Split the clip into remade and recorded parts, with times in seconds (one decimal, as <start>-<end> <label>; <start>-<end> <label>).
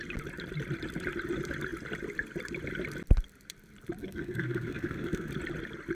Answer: 0.0-4.0 recorded; 4.0-5.3 remade; 5.3-5.9 recorded